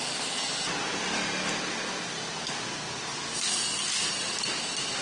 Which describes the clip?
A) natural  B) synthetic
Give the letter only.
A